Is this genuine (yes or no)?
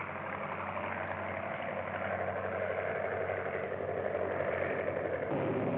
yes